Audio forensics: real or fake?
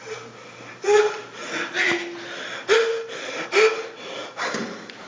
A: real